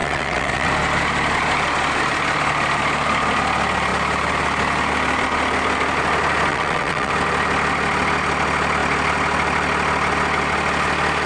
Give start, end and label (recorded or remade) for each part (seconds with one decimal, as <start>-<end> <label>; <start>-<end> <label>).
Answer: 0.0-0.7 remade; 0.7-6.5 recorded; 6.5-7.1 remade; 7.1-11.3 recorded